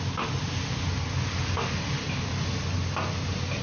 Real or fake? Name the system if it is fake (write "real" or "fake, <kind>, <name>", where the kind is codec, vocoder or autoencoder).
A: real